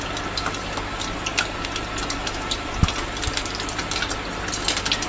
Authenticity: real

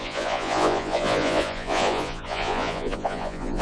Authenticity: fake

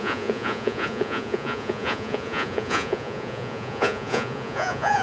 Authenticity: fake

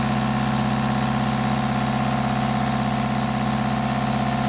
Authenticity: real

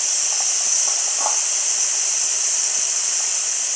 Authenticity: real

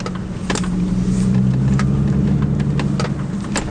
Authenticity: real